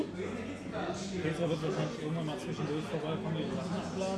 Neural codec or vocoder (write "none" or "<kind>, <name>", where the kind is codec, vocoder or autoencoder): none